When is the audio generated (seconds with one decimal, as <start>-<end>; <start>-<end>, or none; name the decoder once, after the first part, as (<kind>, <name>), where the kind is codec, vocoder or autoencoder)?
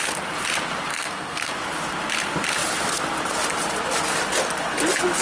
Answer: 0.9-1.5 (codec, SNAC)